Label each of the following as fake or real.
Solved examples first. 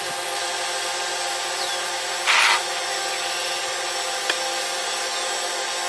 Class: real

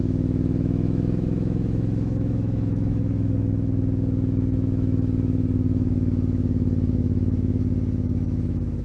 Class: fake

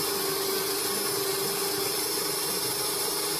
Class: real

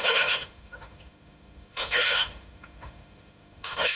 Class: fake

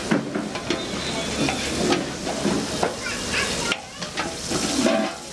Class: real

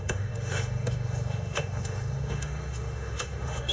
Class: fake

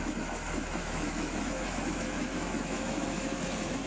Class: fake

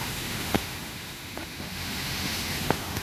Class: fake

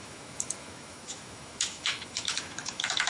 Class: fake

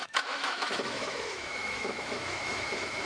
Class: fake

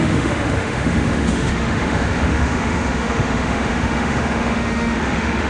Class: fake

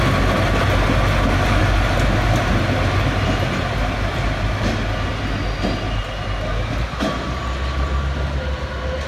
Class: real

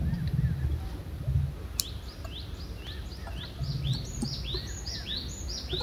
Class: real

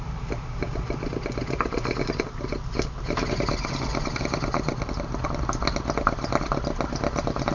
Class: real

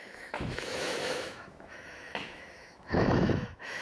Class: fake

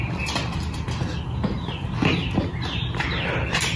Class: real